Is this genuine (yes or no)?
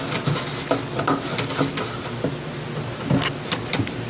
yes